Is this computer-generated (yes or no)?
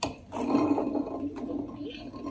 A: no